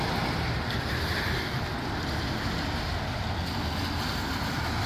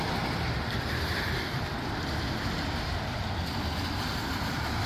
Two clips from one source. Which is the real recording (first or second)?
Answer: first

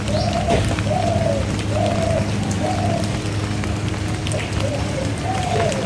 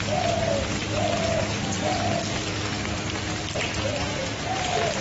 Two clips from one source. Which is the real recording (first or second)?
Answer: second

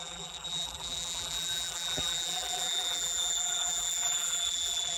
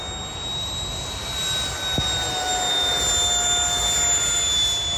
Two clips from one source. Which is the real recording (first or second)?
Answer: second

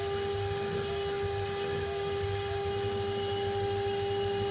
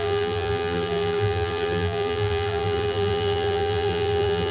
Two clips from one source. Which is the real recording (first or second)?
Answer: first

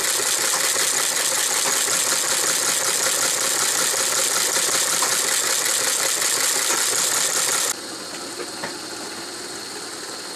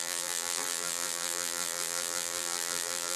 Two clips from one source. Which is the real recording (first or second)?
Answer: first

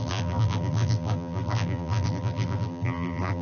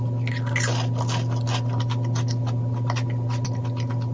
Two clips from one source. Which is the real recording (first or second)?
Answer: second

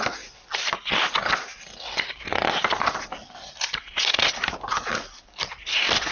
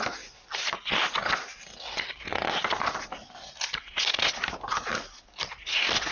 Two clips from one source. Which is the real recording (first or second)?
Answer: second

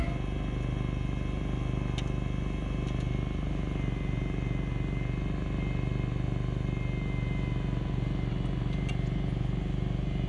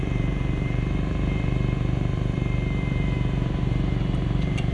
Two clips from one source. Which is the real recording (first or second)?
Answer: first